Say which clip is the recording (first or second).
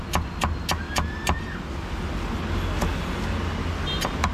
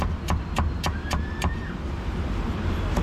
first